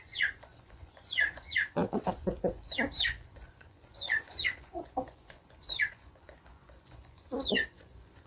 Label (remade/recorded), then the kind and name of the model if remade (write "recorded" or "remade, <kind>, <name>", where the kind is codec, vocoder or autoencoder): remade, vocoder, Vocos